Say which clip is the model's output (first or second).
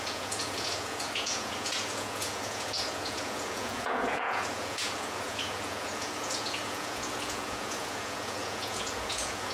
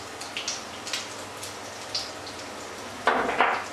first